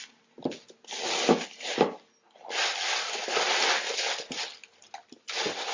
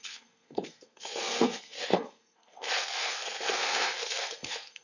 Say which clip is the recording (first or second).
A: first